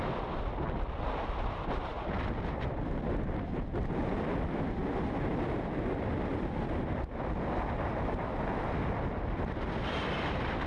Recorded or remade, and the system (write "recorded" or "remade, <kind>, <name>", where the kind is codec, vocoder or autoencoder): recorded